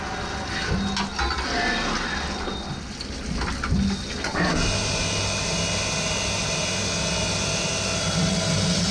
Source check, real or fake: real